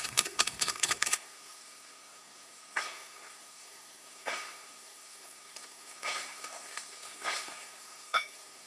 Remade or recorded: remade